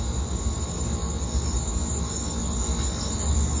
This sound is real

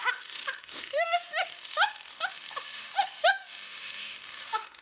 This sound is fake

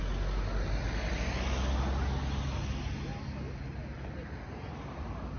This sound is real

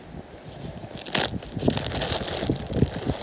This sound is real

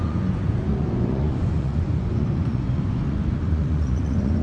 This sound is fake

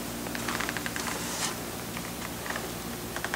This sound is real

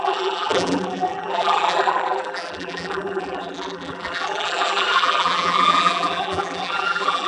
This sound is fake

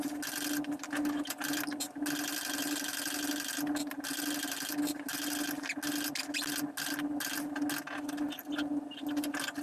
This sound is real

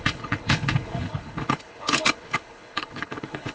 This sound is fake